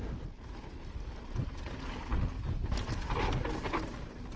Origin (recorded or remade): recorded